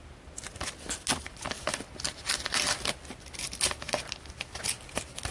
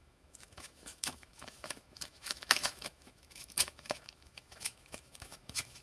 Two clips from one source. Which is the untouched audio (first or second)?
first